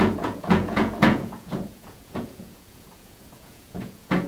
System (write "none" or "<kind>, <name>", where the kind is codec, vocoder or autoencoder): vocoder, Vocos